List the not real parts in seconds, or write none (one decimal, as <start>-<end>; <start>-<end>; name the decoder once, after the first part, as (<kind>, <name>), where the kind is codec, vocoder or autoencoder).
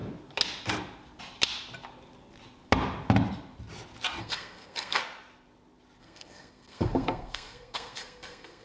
4.2-5.0 (codec, SNAC); 6.0-8.6